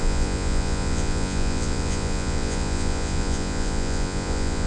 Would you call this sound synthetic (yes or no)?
yes